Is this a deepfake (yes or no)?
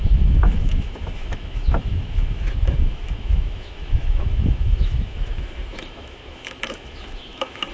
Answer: yes